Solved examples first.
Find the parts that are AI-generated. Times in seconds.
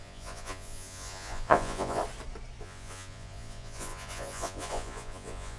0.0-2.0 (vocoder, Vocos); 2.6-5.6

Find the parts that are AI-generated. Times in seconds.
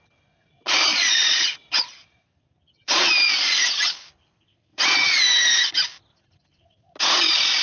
0.9-3.1 (vocoder, Vocos); 4.7-5.2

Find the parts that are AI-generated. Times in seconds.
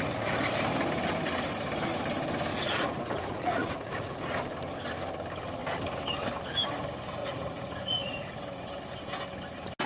2.5-4.2 (vocoder, Vocos); 7.2-8.3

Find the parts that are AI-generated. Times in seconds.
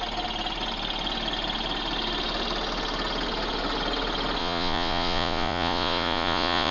4.4-6.7 (vocoder, Vocos)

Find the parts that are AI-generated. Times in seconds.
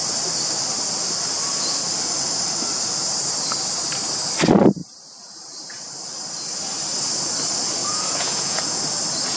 7.8-8.8 (vocoder, Vocos)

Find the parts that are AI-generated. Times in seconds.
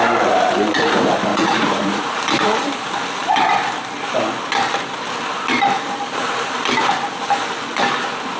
1.3-2.2 (vocoder, Vocos)